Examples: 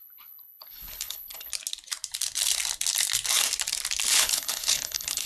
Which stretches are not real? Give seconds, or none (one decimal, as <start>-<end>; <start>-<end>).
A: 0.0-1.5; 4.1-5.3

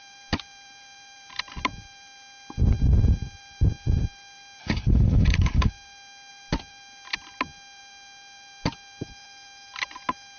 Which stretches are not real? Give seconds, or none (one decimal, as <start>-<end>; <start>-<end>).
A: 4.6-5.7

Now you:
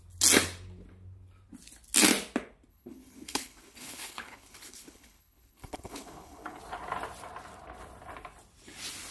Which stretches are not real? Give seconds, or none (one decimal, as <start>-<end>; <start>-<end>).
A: 2.7-6.6

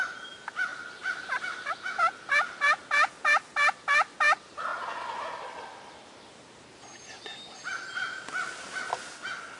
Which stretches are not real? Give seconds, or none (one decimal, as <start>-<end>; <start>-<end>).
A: none

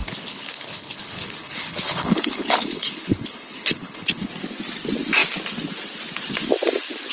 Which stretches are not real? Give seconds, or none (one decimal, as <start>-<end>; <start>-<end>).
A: 0.0-4.3

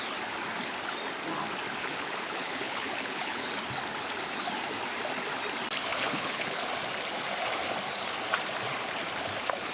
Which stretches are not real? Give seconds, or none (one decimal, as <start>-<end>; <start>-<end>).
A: 1.8-3.5; 5.9-6.7